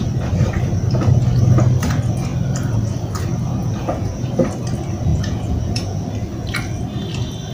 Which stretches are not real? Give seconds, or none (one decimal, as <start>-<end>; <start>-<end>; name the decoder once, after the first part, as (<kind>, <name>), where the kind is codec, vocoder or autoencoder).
3.6-4.3 (vocoder, Vocos); 5.1-6.0